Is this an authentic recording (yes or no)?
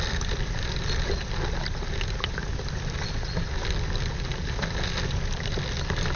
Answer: yes